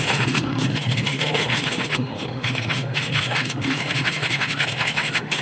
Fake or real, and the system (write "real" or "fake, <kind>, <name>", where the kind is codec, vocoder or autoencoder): fake, autoencoder, DAC-VAE